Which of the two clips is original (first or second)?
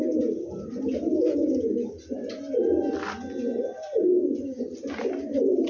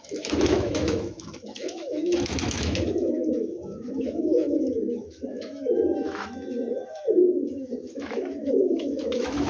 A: first